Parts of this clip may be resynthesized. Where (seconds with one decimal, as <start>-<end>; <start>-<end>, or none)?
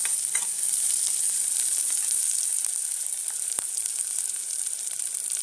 0.0-5.4